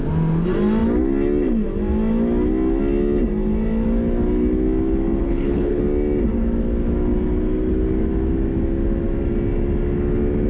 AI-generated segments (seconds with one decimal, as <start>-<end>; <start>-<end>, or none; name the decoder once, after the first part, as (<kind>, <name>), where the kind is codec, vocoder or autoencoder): 5.2-5.8 (codec, HILCodec)